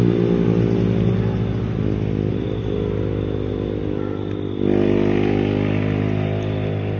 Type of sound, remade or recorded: recorded